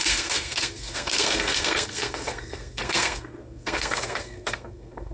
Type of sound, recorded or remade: remade